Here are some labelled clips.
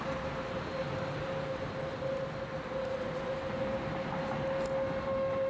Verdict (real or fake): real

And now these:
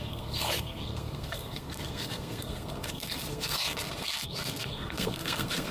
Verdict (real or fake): fake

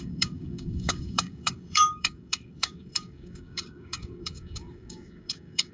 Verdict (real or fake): fake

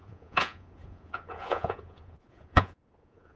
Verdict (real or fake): fake